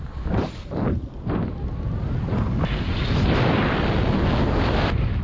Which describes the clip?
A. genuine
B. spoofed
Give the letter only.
A